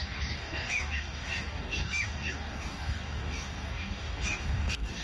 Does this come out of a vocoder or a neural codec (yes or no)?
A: yes